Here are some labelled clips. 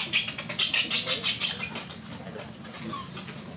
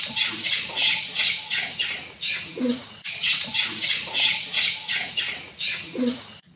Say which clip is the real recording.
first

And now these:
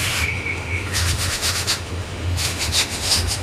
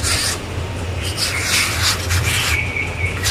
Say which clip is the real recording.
second